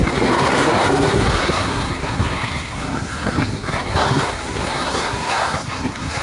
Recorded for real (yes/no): no